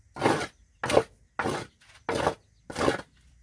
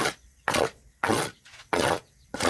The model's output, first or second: second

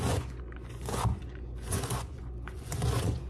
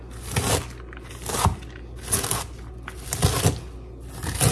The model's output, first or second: first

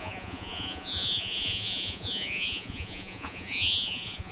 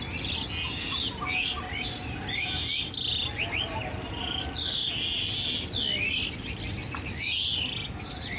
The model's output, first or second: first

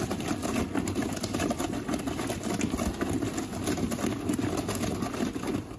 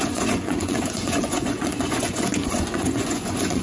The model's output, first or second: second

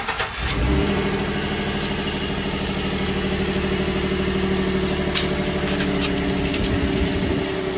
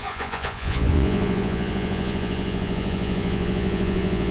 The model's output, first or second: second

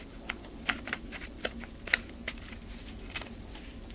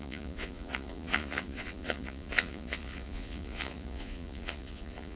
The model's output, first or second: second